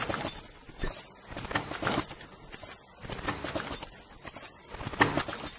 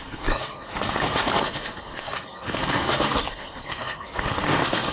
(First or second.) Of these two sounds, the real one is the first